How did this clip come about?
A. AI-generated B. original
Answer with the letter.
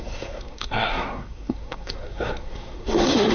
A